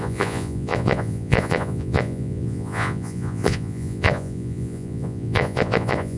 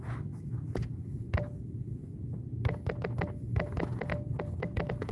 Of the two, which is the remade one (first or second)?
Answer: first